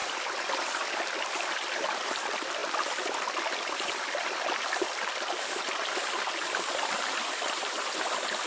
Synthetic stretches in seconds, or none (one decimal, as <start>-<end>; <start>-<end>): 0.0-2.6; 4.8-8.5